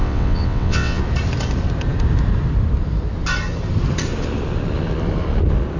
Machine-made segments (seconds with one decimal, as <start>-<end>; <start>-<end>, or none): 0.0-1.0

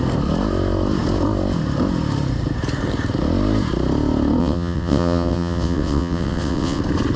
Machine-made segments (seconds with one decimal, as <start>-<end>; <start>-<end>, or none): 4.4-6.8

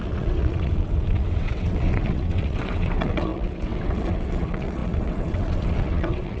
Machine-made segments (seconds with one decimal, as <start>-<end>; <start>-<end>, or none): 0.0-6.4

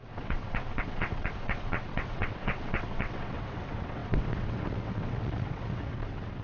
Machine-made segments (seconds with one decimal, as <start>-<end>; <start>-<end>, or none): 0.0-6.4

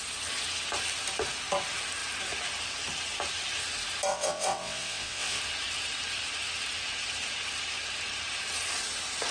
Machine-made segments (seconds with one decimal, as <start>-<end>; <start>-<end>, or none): 4.1-5.4

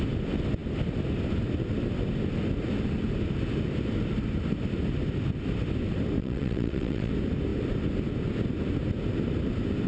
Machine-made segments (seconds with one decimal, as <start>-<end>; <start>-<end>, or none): 6.2-7.1